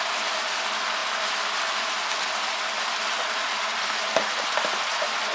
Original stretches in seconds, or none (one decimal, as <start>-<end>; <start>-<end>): 0.0-5.3